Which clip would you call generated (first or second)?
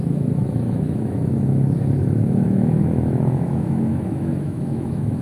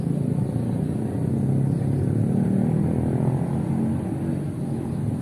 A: first